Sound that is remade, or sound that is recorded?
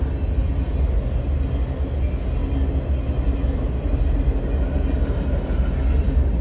recorded